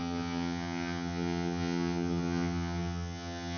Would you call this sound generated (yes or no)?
yes